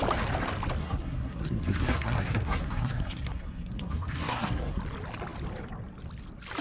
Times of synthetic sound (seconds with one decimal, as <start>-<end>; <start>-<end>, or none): 0.8-4.8